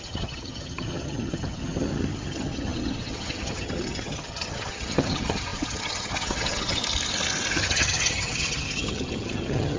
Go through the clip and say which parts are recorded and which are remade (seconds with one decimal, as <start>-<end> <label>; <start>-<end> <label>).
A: 0.0-6.8 remade; 6.8-7.5 recorded; 7.5-9.8 remade